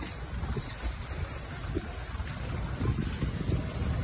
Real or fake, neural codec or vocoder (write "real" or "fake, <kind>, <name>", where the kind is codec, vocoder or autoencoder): real